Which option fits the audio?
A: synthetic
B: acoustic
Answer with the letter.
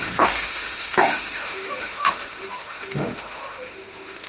A